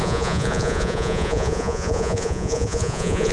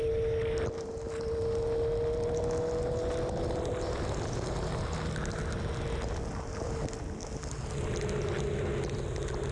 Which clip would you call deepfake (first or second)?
first